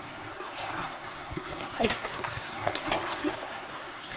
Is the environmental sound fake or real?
fake